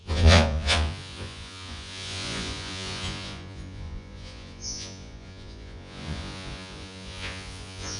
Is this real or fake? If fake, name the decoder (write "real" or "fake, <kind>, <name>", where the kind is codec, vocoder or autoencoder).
fake, vocoder, Vocos